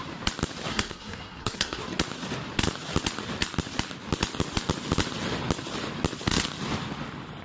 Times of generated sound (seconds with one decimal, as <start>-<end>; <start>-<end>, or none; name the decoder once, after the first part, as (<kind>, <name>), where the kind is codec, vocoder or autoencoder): 0.7-1.8 (codec, SNAC)